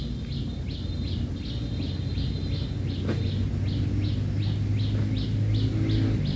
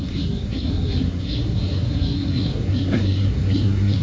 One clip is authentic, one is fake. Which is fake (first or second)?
second